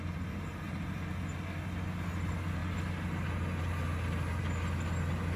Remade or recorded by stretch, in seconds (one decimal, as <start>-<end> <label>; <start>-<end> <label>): 0.0-5.4 recorded